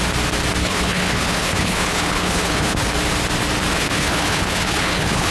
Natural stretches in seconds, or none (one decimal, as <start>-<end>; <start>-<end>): 0.0-0.6; 2.9-3.7